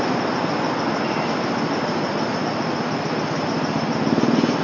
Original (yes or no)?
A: yes